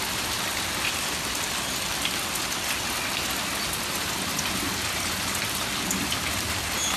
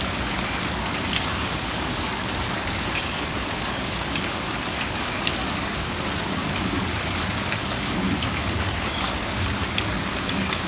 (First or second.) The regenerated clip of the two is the second